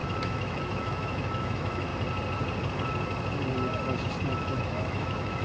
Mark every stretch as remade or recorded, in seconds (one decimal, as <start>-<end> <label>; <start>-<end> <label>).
0.0-1.9 remade; 1.9-4.3 recorded; 4.3-5.4 remade